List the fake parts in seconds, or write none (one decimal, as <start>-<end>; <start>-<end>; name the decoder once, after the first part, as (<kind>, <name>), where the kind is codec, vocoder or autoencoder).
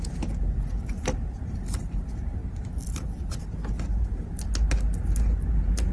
3.9-4.4 (vocoder, BigVGAN v2)